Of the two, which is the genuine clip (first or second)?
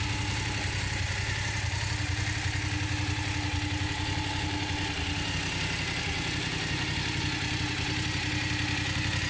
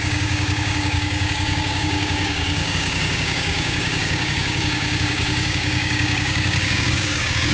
first